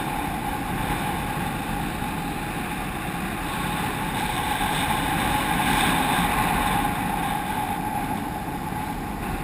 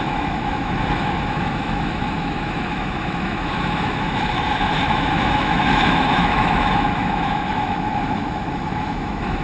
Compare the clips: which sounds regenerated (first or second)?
second